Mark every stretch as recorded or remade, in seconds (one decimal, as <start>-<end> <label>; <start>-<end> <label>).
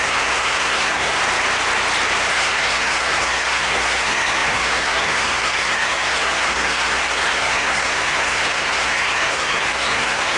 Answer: 0.0-1.2 remade; 1.2-2.3 recorded; 2.3-10.4 remade